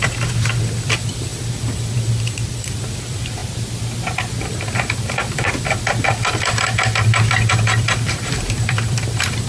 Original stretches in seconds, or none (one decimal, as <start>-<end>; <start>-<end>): 3.4-4.4